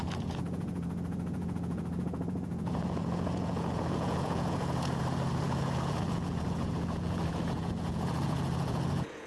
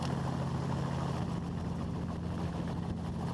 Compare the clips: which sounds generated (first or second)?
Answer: first